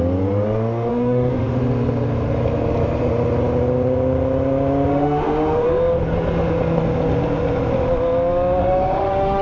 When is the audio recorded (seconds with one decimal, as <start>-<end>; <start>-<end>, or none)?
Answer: 0.0-0.9; 1.6-4.9; 5.7-8.6